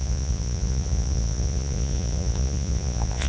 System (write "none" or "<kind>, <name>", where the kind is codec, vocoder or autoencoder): vocoder, Vocos